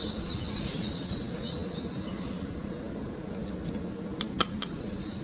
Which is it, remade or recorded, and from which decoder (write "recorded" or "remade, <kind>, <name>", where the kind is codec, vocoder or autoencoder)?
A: recorded